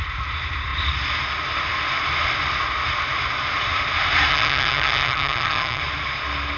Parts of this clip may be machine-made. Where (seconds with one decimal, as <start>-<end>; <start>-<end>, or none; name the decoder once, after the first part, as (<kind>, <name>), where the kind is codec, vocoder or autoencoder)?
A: 4.3-5.8 (vocoder, HiFi-GAN)